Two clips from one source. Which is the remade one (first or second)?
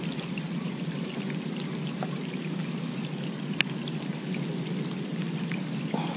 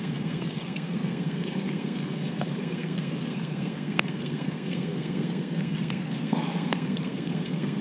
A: second